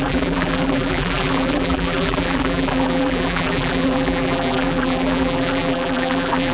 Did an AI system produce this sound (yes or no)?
yes